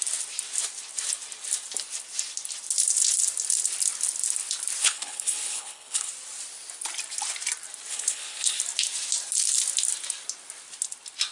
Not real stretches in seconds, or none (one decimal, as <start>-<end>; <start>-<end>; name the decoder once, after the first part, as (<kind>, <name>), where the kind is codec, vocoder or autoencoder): 4.8-6.1 (codec, HILCodec); 7.9-8.6

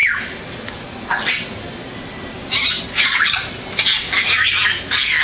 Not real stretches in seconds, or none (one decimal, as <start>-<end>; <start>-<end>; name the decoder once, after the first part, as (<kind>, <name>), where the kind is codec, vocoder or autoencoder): none